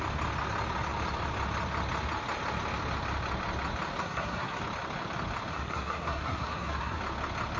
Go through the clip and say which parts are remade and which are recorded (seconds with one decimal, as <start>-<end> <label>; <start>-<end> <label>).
0.0-4.0 recorded; 4.0-4.6 remade; 4.6-5.5 recorded; 5.5-7.0 remade; 7.0-7.6 recorded